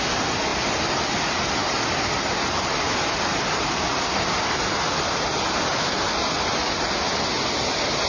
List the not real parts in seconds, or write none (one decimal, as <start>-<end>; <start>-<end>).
none

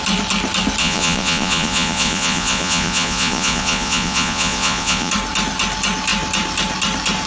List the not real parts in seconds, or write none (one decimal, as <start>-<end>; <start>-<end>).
0.8-5.1

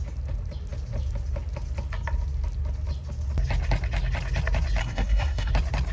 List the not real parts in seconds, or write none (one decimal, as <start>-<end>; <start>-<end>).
4.8-5.5

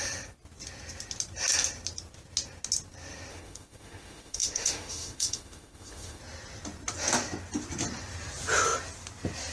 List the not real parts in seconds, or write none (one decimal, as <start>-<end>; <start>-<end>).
3.3-6.2

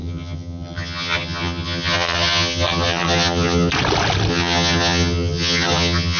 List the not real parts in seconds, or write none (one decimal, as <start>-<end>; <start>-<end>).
0.0-3.7; 4.3-6.2